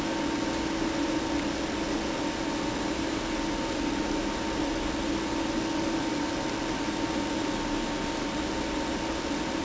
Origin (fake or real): real